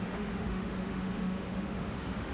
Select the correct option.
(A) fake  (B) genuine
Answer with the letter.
A